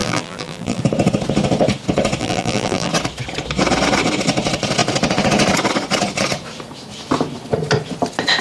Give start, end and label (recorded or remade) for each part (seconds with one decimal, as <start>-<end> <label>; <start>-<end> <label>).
0.0-0.8 remade; 0.8-2.2 recorded; 2.2-2.9 remade; 2.9-8.4 recorded